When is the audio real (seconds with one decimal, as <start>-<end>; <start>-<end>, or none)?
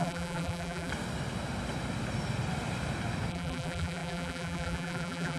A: 0.9-3.3